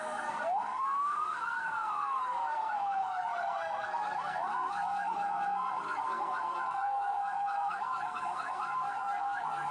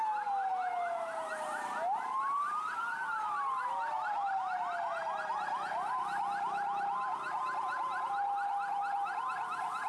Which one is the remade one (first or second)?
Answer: first